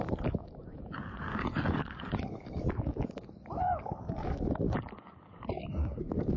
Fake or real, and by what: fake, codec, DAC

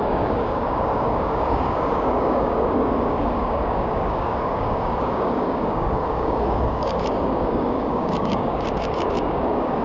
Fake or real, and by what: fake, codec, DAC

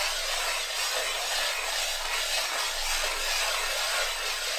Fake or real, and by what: real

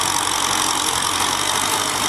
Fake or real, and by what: real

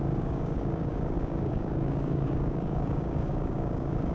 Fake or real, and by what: fake, codec, DAC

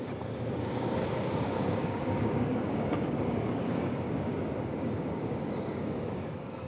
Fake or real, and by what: fake, codec, DAC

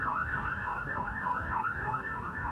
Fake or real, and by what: fake, codec, DAC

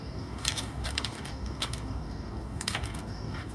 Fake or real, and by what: fake, codec, DAC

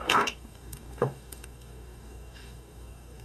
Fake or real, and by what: fake, codec, DAC